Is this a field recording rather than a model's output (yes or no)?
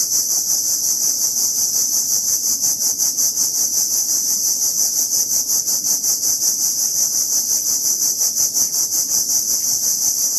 yes